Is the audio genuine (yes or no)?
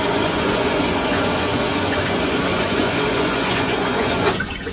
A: no